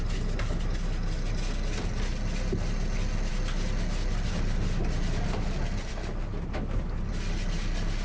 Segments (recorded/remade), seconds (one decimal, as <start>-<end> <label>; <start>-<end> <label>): 0.0-8.0 recorded